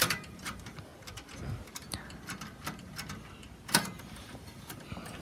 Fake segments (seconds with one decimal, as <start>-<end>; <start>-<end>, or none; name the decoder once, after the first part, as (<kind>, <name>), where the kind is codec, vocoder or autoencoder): 0.0-0.9 (vocoder, BigVGAN v2); 4.0-5.2